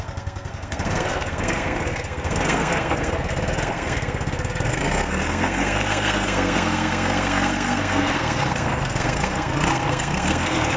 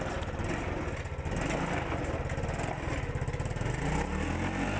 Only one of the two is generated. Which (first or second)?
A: first